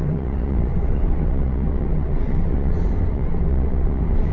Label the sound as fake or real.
fake